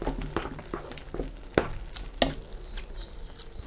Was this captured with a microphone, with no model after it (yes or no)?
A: yes